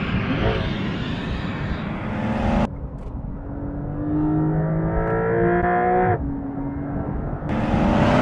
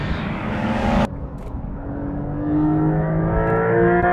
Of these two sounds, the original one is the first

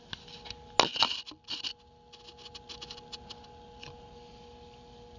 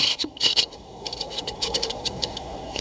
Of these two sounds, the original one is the first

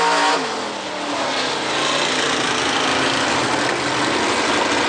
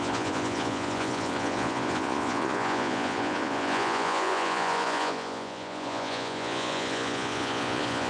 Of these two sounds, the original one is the first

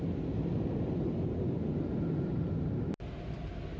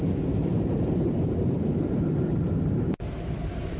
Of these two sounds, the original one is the first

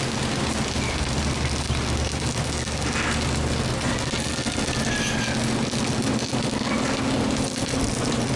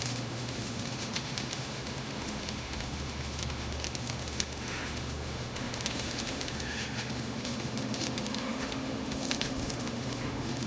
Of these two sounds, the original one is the first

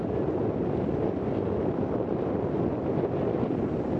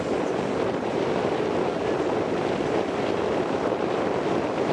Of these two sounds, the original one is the first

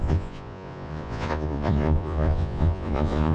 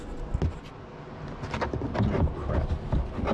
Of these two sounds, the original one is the second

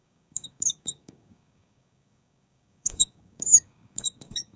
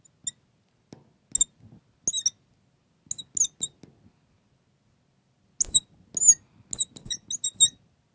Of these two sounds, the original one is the second